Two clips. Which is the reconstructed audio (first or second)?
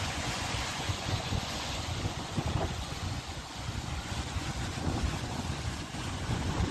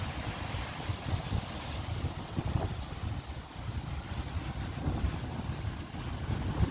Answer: first